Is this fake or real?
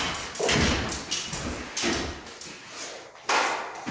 real